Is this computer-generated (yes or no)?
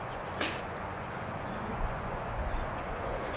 yes